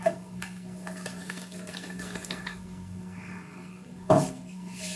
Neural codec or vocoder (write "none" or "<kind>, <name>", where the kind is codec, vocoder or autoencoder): codec, SNAC